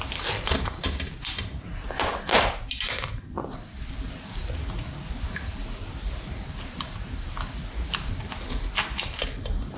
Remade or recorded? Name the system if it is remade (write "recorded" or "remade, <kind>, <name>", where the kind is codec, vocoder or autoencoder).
recorded